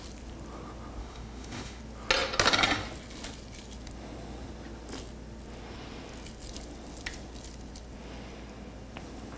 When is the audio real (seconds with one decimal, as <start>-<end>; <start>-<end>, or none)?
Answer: 0.0-1.0; 1.8-9.4